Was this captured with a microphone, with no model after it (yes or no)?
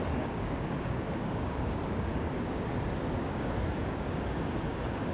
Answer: no